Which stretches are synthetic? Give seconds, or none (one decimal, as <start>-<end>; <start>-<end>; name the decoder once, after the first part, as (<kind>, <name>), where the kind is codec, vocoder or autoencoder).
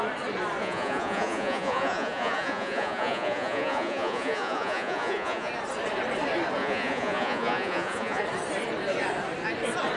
0.6-5.5 (vocoder, Vocos); 6.6-8.2